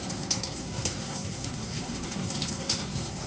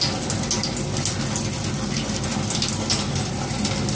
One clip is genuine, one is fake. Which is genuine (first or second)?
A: second